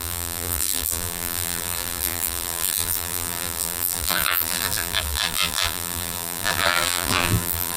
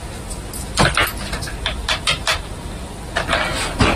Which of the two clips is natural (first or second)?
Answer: second